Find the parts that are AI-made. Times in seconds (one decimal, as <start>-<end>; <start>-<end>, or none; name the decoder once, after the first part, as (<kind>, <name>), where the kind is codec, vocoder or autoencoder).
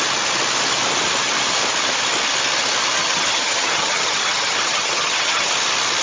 3.0-5.5 (vocoder, HiFi-GAN)